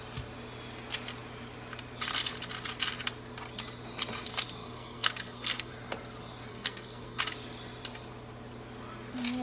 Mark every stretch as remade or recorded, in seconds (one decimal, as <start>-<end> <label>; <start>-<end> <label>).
0.0-4.6 recorded; 4.6-5.7 remade; 5.7-6.5 recorded; 6.5-7.2 remade; 7.2-9.4 recorded